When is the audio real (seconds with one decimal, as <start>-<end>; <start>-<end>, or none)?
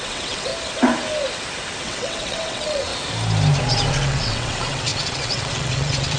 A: 0.5-1.8; 2.9-3.9